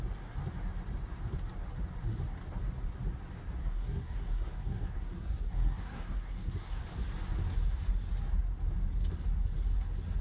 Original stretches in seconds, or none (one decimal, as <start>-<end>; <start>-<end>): 0.0-3.6; 6.8-10.2